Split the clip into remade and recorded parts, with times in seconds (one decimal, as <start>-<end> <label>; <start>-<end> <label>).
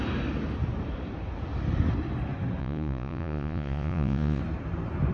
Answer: 0.0-2.6 recorded; 2.6-4.4 remade; 4.4-5.1 recorded